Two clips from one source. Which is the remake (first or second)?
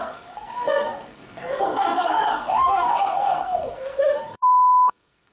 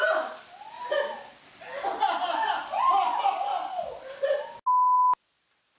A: first